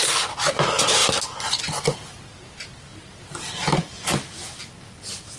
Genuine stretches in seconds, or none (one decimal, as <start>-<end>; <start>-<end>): 0.0-5.4